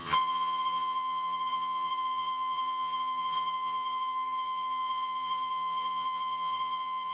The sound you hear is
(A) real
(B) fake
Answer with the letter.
B